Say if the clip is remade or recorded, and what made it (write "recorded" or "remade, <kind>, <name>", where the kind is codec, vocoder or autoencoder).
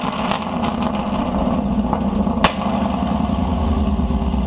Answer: recorded